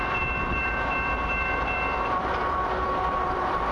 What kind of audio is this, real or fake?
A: fake